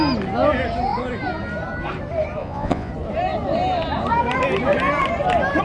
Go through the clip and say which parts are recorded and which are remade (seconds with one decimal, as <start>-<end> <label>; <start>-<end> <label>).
0.0-2.4 recorded; 2.4-2.9 remade; 2.9-5.6 recorded